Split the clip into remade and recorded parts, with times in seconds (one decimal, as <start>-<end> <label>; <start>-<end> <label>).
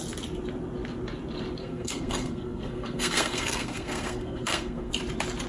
0.0-1.6 recorded; 1.6-4.9 remade; 4.9-5.5 recorded